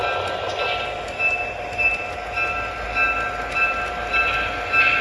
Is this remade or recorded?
recorded